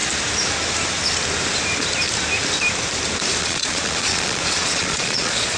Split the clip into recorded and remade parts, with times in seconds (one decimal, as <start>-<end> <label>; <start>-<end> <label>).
0.0-3.4 recorded; 3.4-5.6 remade